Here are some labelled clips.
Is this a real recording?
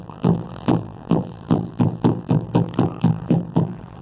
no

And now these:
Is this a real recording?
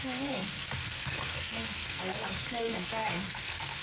no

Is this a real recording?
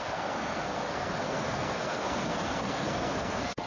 no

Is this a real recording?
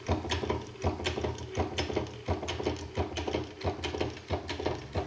yes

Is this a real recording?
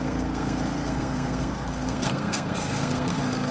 no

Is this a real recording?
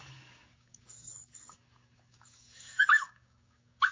no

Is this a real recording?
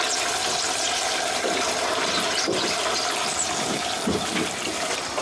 yes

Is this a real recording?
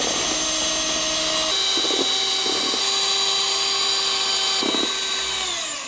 yes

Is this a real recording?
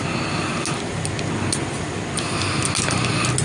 yes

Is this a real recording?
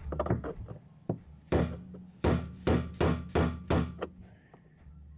yes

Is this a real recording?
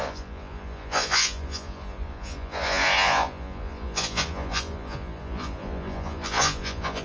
no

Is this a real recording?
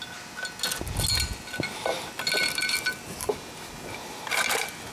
yes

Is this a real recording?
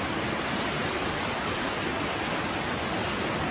yes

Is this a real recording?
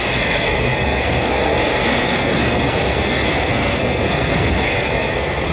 no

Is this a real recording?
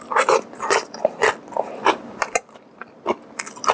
yes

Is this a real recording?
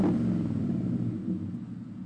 yes